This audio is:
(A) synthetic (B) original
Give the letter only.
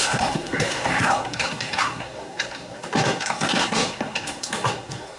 A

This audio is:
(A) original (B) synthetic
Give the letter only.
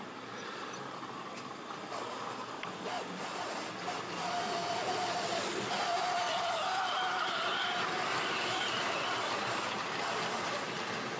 A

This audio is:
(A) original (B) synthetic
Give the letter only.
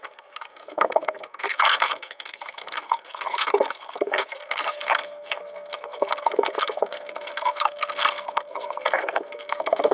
B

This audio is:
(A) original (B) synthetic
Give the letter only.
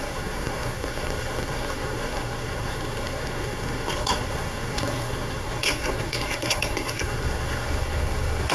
B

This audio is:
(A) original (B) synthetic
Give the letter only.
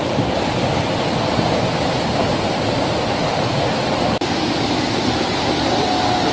A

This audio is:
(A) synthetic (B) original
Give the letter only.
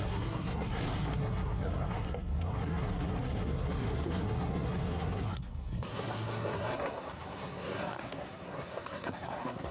A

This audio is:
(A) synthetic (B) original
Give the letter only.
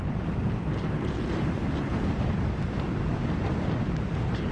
B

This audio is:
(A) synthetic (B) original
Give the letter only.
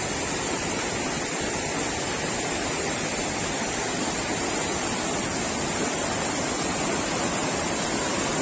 B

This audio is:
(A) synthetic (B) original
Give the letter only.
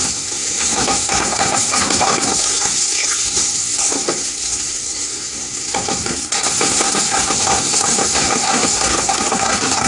A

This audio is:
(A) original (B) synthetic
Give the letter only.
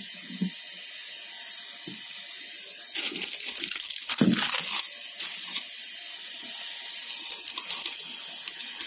A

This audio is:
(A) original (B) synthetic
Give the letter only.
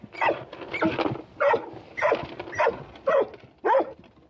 A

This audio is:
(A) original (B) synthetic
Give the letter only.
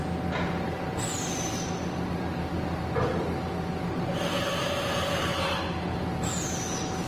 A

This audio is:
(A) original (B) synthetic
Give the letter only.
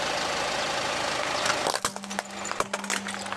A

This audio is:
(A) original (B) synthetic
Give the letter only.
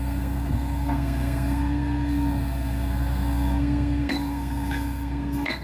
B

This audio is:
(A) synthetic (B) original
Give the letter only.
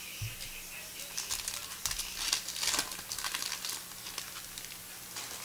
B